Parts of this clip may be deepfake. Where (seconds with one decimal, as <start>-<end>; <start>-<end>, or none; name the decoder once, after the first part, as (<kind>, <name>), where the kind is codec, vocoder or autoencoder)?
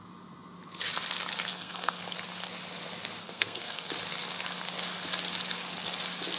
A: 1.5-2.0 (codec, SNAC); 3.2-3.9